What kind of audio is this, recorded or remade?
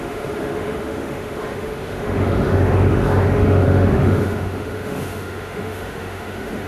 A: remade